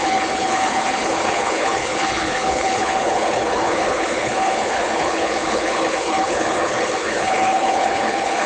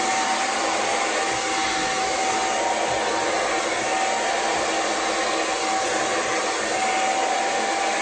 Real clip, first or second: second